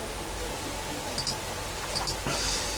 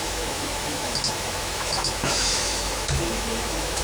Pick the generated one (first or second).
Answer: second